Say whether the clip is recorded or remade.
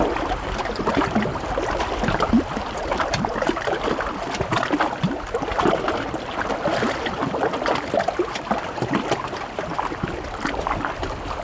recorded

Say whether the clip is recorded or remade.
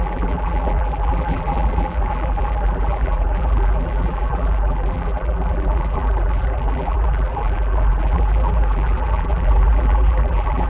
remade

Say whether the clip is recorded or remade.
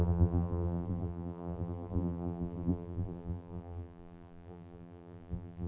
remade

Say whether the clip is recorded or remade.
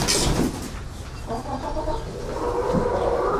recorded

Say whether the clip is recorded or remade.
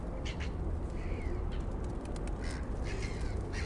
recorded